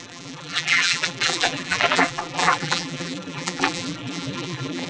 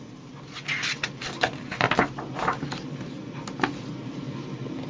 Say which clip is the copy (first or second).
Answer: first